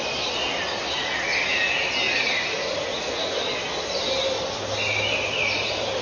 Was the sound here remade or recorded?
recorded